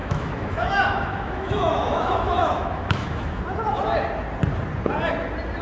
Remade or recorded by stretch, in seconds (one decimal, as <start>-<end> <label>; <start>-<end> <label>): 0.0-3.4 remade; 3.4-5.6 recorded

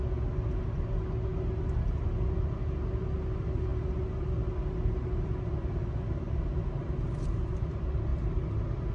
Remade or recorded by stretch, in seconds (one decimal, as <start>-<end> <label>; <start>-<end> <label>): 0.0-8.9 recorded

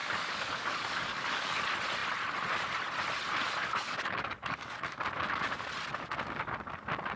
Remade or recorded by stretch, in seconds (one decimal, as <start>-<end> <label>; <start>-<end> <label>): 0.0-1.6 remade; 1.6-3.6 recorded; 3.6-5.0 remade; 5.0-7.2 recorded

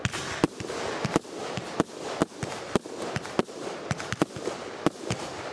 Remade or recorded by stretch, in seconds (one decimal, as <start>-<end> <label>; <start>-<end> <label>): 0.0-5.5 recorded

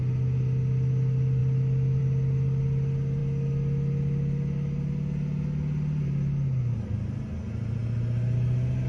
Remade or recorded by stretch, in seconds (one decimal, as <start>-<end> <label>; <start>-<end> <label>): 0.0-8.9 recorded